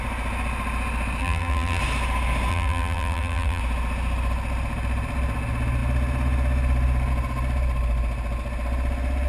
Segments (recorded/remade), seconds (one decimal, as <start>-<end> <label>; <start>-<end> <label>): 0.0-1.2 recorded; 1.2-1.8 remade; 1.8-2.5 recorded; 2.5-3.6 remade; 3.6-9.3 recorded